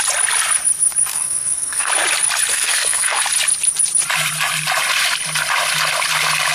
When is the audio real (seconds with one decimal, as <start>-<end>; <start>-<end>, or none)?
0.0-1.1; 1.9-2.5; 3.2-6.5